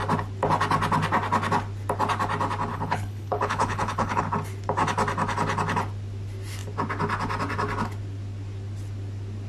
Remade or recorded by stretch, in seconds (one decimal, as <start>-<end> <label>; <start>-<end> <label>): 0.0-2.7 recorded; 2.7-4.2 remade; 4.2-9.5 recorded